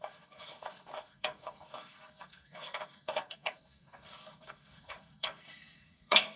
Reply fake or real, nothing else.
fake